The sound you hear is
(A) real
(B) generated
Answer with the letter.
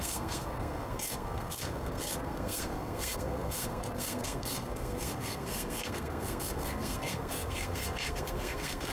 B